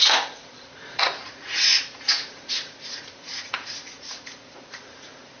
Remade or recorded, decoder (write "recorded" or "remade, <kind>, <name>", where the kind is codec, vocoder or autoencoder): remade, vocoder, Vocos